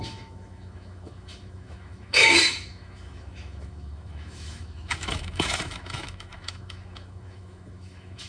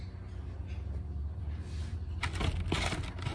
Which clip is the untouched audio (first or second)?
second